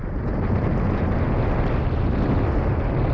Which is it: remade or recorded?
recorded